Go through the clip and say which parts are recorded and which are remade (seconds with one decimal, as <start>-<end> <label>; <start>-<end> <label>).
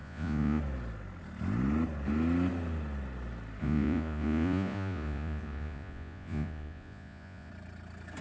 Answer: 0.0-0.6 remade; 0.6-3.6 recorded; 3.6-7.5 remade; 7.5-8.2 recorded